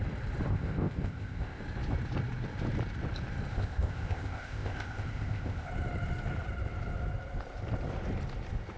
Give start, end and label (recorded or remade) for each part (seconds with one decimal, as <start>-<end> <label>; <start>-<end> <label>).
0.0-0.5 recorded; 0.5-1.6 remade; 1.6-3.5 recorded; 3.5-5.7 remade; 5.7-8.8 recorded